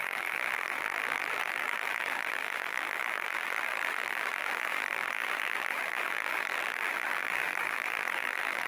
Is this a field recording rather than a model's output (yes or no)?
no